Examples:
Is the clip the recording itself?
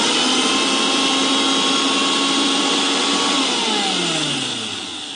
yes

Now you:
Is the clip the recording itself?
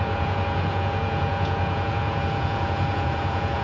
no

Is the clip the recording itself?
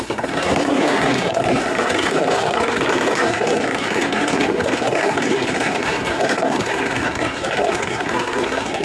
no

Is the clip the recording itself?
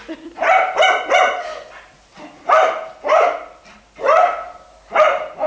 yes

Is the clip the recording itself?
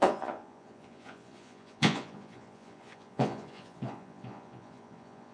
no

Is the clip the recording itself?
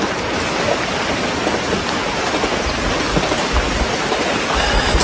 yes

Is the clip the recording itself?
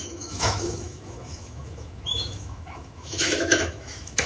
no